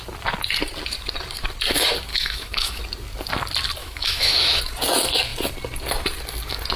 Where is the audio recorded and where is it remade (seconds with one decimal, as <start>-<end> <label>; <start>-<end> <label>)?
0.0-2.1 recorded; 2.1-2.8 remade; 2.8-3.8 recorded; 3.8-4.6 remade; 4.6-6.8 recorded

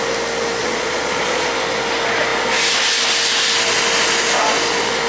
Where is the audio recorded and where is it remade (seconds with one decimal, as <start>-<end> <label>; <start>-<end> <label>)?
0.0-0.6 recorded; 0.6-1.5 remade; 1.5-5.1 recorded